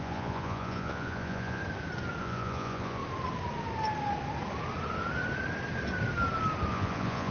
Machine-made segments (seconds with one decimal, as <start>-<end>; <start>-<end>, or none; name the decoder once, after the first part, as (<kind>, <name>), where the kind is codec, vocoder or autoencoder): 0.0-1.6 (vocoder, Vocos); 2.2-3.0; 6.7-7.3